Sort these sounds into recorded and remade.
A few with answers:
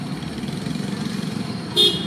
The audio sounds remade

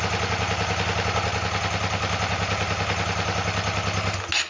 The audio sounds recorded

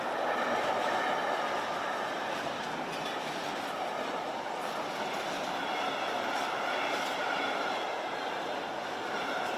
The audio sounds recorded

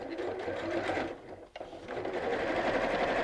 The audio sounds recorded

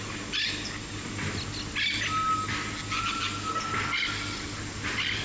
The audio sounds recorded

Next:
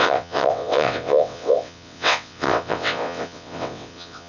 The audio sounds remade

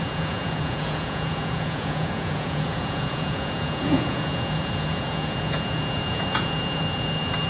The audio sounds remade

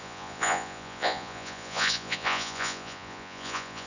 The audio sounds remade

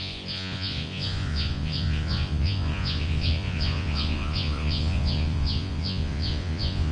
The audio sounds remade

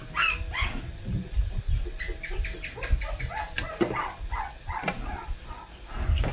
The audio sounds recorded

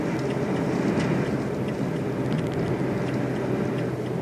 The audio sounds recorded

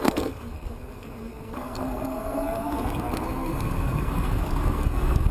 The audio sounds remade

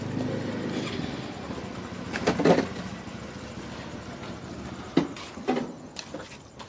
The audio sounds recorded